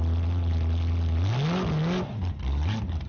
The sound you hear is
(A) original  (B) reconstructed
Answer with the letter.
A